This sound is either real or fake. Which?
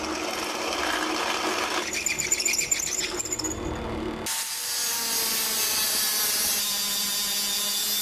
real